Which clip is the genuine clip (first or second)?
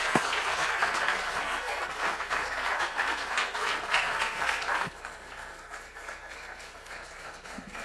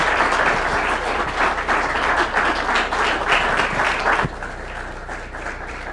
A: second